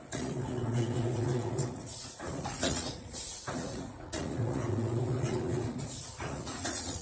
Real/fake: fake